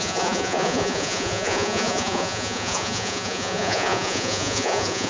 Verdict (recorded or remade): remade